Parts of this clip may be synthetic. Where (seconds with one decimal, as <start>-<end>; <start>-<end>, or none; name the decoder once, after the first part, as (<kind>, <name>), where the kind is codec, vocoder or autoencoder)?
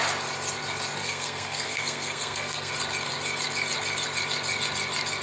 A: 1.0-2.7 (codec, SNAC)